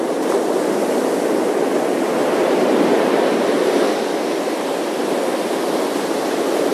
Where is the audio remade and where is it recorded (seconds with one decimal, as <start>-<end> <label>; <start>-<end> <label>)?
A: 0.0-6.7 recorded